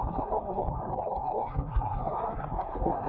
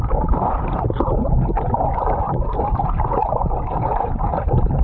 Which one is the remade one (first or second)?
first